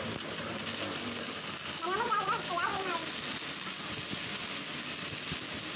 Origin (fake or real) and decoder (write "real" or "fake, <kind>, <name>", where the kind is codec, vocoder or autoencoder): real